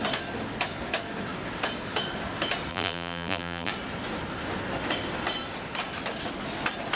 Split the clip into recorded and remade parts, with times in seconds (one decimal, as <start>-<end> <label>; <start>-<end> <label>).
0.0-2.7 recorded; 2.7-3.7 remade; 3.7-7.0 recorded